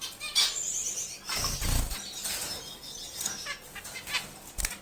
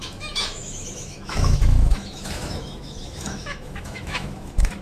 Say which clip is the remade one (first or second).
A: second